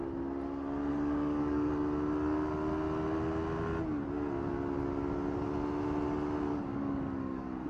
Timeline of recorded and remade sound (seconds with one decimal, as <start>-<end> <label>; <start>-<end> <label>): 0.0-0.9 recorded; 0.9-1.7 remade; 1.7-6.5 recorded; 6.5-7.7 remade